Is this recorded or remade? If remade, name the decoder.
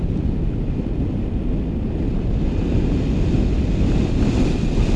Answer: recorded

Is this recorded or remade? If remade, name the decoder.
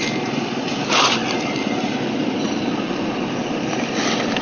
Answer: recorded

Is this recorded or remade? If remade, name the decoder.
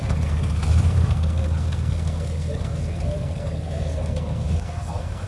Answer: remade, codec, SNAC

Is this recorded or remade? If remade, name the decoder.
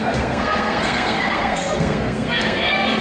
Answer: remade, codec, SNAC